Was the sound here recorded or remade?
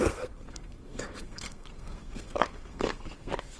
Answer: remade